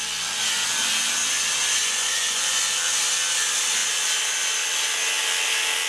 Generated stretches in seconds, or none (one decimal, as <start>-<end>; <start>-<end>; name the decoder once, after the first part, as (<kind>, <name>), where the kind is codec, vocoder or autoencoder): 1.8-2.6 (vocoder, Vocos)